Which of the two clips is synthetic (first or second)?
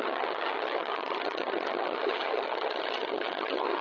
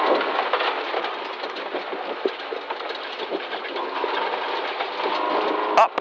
first